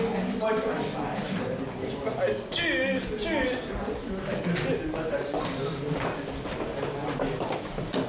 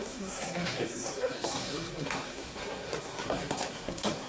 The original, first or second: first